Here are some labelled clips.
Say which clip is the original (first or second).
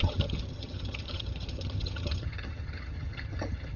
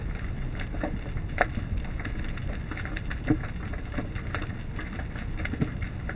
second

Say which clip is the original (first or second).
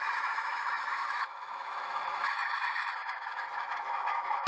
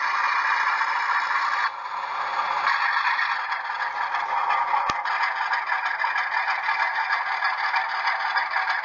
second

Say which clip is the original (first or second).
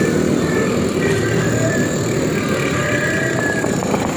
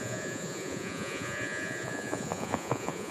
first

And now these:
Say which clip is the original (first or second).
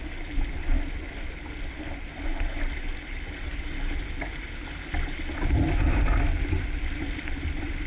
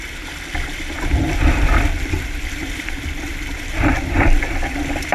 first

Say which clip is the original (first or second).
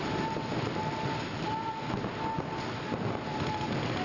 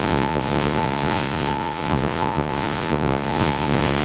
first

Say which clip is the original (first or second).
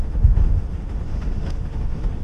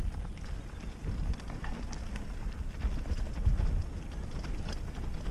second